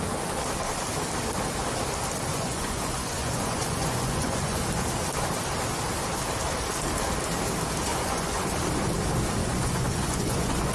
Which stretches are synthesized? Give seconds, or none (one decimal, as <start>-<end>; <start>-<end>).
2.3-4.6; 7.9-8.5; 9.4-10.7